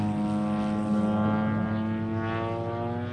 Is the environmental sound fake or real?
real